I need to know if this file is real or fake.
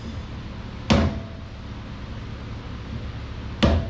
real